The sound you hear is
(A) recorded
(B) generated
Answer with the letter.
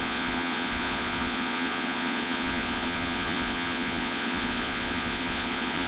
B